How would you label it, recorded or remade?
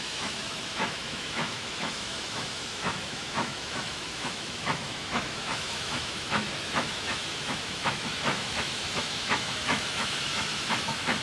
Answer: remade